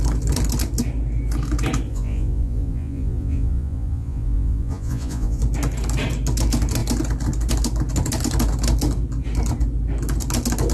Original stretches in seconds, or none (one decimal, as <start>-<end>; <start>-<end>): 0.0-1.9; 5.4-10.7